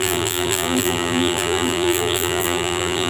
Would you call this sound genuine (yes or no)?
no